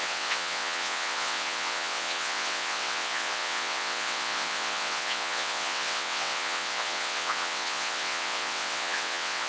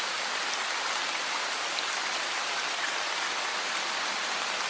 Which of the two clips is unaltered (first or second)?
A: second